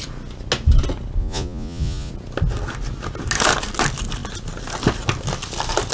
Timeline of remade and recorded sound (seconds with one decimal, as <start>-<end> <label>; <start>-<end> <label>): 0.0-1.2 recorded; 1.2-2.1 remade; 2.1-5.9 recorded